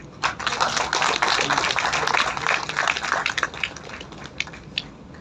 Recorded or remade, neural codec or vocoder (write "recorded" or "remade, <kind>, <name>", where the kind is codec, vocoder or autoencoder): recorded